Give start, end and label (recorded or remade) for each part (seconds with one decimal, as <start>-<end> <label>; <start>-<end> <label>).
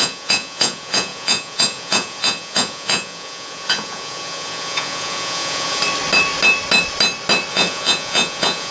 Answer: 0.0-5.8 remade; 5.8-7.5 recorded; 7.5-8.7 remade